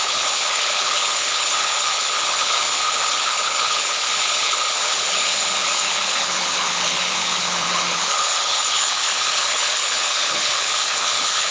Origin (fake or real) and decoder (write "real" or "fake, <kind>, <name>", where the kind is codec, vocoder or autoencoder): fake, codec, HILCodec